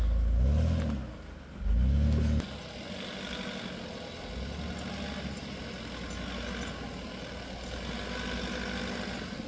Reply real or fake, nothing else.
real